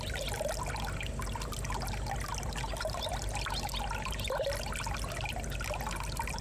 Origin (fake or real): real